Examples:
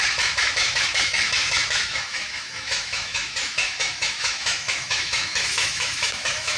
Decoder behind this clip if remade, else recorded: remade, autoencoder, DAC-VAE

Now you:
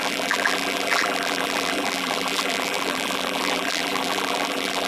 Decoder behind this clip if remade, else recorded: remade, vocoder, BigVGAN v2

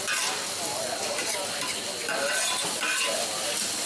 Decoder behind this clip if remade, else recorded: recorded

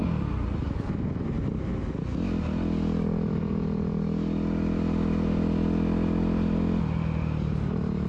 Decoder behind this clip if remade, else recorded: recorded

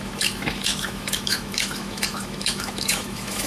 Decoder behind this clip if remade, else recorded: remade, autoencoder, DAC-VAE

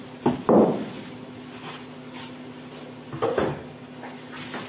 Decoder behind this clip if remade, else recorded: recorded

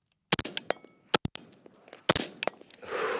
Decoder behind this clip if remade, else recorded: recorded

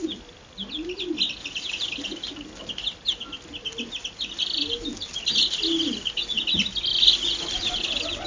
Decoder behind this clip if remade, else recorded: recorded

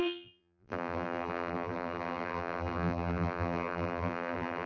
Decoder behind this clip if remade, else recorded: remade, vocoder, BigVGAN v2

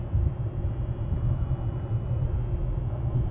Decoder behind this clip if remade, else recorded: recorded